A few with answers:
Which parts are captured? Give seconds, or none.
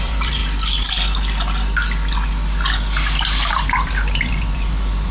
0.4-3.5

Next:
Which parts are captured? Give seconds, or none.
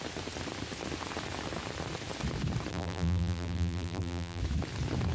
0.0-2.7; 4.4-5.1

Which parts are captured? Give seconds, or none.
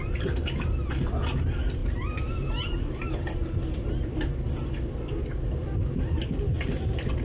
0.0-7.2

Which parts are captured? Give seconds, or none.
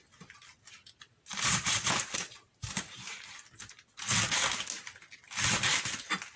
0.0-1.3; 3.3-6.4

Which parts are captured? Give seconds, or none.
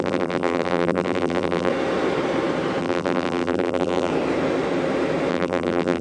1.7-2.8; 4.1-5.3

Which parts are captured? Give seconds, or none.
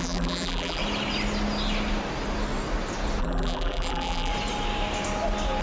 0.8-3.2; 4.3-5.6